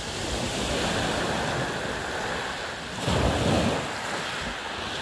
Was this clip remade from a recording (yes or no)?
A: no